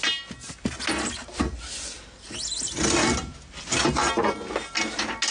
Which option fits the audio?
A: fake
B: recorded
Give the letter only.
B